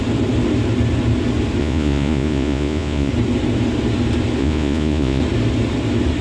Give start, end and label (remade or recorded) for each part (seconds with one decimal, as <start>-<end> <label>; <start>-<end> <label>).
0.0-1.6 recorded; 1.6-3.1 remade; 3.1-4.4 recorded; 4.4-5.2 remade; 5.2-6.2 recorded